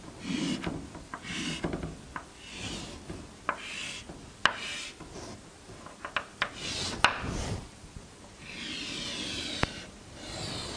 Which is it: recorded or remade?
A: recorded